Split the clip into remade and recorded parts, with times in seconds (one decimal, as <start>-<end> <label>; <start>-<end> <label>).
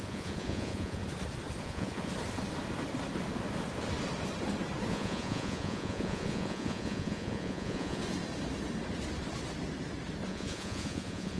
0.0-1.0 remade; 1.0-1.6 recorded; 1.6-2.1 remade; 2.1-4.9 recorded; 4.9-8.0 remade; 8.0-10.3 recorded; 10.3-11.4 remade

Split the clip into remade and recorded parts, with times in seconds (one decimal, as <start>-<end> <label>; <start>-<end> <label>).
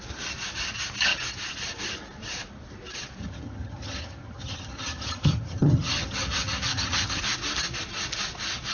0.0-3.2 recorded; 3.2-7.2 remade; 7.2-8.7 recorded